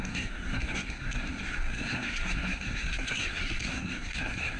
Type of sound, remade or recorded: remade